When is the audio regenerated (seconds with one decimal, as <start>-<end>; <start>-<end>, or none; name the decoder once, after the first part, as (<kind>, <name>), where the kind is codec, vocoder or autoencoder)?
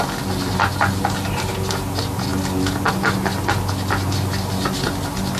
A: none